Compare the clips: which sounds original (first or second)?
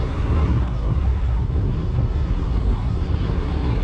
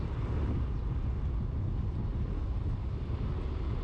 second